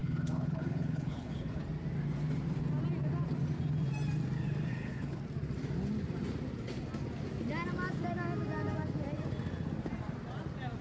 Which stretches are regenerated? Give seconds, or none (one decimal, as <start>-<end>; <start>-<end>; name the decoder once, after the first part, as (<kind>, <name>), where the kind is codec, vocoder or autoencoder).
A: 0.0-1.6 (codec, HILCodec); 4.7-5.2